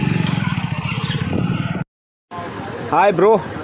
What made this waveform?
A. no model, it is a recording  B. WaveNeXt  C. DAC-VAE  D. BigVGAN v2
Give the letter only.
A